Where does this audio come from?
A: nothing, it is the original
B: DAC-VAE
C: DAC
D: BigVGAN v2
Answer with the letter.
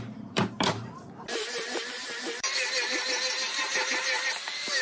D